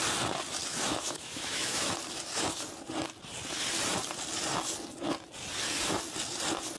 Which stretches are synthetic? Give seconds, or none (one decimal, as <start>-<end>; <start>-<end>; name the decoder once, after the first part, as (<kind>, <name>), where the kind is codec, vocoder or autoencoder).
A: 0.7-1.9 (autoencoder, DAC-VAE)